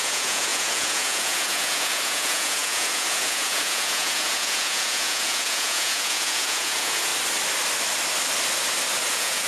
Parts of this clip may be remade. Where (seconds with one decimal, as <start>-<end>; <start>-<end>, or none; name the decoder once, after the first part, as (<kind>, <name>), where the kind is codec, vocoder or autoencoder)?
0.0-7.1 (vocoder, Vocos); 9.1-9.5